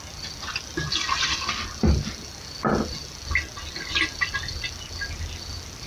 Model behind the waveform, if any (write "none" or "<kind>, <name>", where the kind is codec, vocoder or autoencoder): none